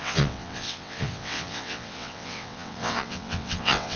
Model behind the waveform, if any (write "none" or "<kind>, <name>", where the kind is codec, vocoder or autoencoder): vocoder, WaveNeXt